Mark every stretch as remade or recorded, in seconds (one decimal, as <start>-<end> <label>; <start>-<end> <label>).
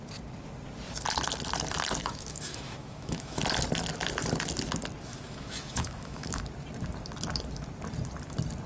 0.0-2.0 recorded; 2.0-3.4 remade; 3.4-5.1 recorded; 5.1-6.4 remade; 6.4-8.7 recorded